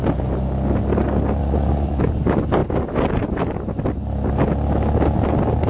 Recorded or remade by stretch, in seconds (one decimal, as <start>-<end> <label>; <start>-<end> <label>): 0.0-1.4 recorded; 1.4-2.0 remade; 2.0-5.7 recorded